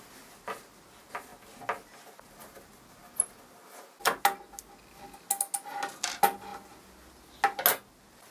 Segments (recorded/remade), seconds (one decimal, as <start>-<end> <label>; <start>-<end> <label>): 0.0-8.3 recorded